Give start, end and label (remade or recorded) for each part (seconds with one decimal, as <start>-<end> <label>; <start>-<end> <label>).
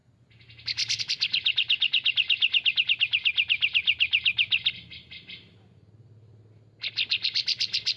0.0-8.0 recorded